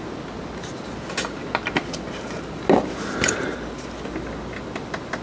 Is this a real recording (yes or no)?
yes